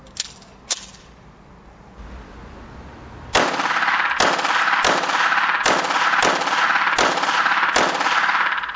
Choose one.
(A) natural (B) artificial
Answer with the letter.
A